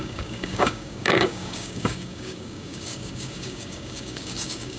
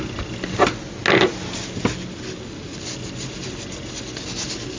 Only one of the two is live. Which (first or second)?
second